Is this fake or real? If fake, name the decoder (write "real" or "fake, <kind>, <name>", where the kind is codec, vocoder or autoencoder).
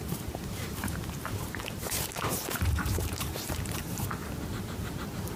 fake, vocoder, BigVGAN v2